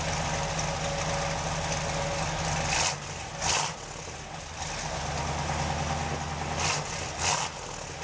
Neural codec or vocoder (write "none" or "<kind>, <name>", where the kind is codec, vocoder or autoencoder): none